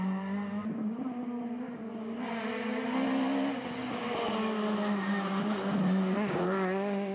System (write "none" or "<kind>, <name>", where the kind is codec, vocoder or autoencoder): none